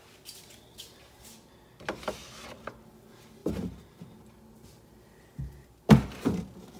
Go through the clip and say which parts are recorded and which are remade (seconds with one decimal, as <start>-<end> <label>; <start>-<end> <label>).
0.0-2.2 recorded; 2.2-2.9 remade; 2.9-3.4 recorded; 3.4-5.3 remade; 5.3-6.8 recorded